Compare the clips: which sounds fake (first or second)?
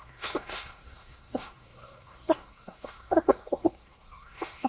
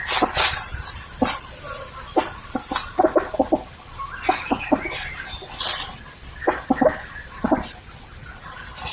first